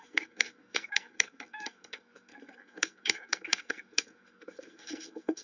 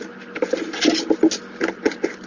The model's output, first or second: first